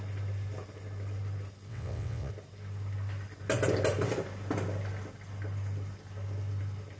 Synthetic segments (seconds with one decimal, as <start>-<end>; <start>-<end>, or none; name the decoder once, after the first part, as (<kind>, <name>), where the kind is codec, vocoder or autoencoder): 1.7-2.3 (vocoder, WaveNeXt)